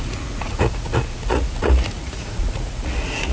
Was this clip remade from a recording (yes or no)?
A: yes